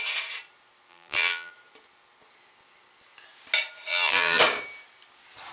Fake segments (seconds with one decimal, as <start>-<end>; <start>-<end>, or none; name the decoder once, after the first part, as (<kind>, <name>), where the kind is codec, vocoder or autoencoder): 0.9-1.5 (vocoder, BigVGAN v2); 3.9-4.4